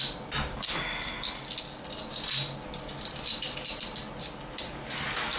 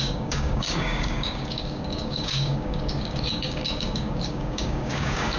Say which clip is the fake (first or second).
second